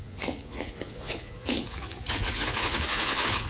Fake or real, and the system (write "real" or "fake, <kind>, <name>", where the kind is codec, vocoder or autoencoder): fake, vocoder, Vocos